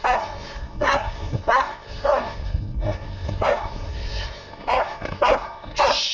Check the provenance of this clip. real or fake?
fake